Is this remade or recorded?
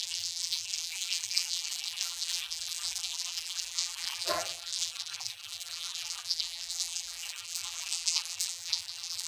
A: remade